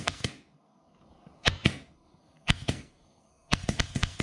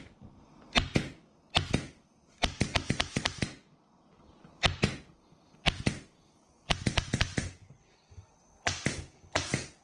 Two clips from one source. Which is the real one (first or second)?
second